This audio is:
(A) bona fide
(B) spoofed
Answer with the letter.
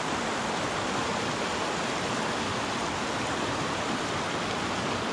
A